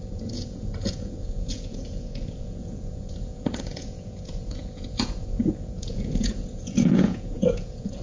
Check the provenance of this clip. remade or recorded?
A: remade